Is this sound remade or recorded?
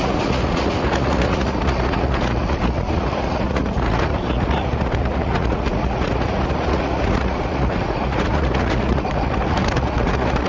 remade